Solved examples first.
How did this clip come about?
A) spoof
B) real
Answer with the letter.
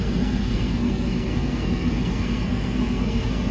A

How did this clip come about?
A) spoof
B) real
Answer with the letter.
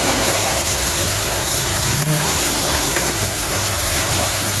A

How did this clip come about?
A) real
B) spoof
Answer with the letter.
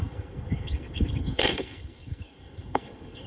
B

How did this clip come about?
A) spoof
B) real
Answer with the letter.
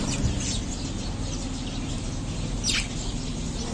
B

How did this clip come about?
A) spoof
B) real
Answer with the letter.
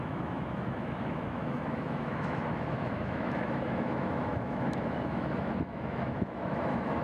A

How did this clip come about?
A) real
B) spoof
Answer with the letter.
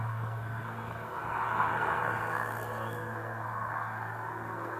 B